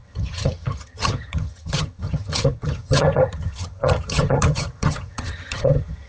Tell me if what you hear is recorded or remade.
remade